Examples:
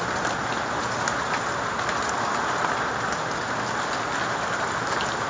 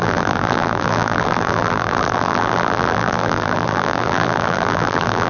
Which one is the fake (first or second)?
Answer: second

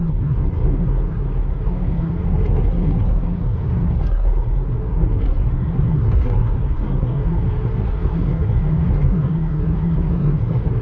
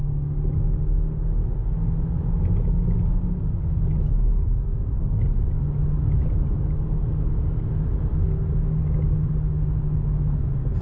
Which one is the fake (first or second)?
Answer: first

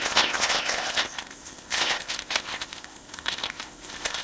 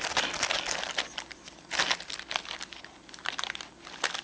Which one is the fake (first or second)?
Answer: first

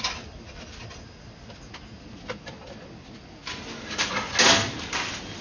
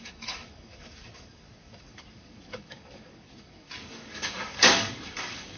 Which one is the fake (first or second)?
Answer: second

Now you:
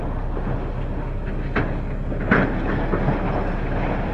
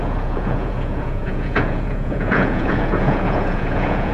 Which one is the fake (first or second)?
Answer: second